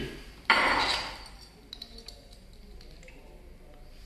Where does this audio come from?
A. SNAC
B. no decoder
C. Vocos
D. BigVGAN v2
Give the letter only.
B